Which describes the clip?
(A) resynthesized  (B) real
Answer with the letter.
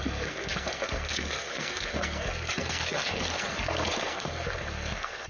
A